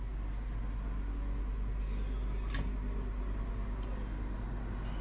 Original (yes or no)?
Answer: yes